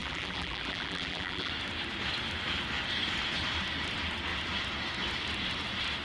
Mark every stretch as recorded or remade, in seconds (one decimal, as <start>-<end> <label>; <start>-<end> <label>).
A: 0.0-1.5 remade; 1.5-6.0 recorded